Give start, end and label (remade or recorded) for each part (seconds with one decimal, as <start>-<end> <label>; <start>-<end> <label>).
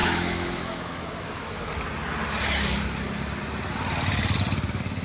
0.0-1.7 remade; 1.7-5.0 recorded